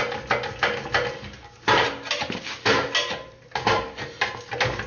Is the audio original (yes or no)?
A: yes